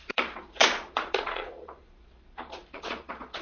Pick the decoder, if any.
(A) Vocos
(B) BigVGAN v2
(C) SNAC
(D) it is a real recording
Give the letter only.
A